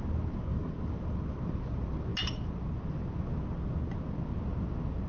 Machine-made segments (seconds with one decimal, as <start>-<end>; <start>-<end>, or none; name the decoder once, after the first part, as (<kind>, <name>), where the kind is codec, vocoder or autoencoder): none